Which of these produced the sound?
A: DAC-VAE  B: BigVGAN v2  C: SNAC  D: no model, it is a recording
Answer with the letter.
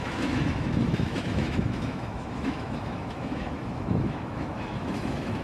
A